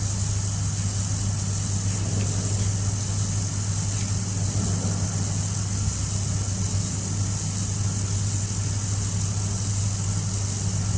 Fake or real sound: real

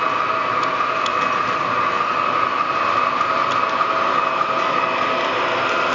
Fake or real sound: real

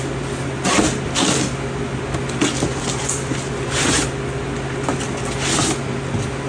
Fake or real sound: real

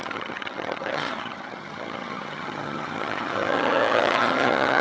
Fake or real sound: fake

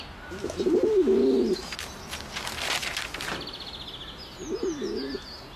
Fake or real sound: real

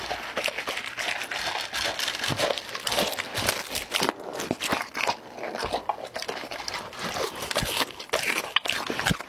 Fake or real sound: real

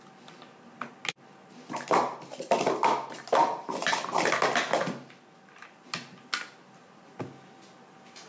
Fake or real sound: real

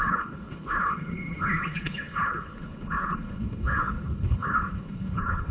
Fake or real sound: fake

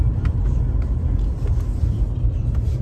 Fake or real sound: real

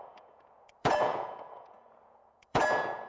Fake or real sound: fake